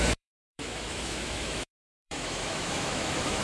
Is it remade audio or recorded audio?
remade